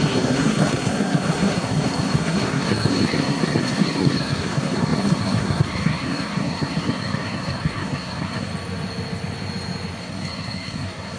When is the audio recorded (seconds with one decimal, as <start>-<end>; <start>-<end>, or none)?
8.5-10.0